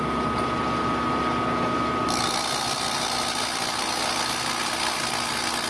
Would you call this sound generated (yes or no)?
no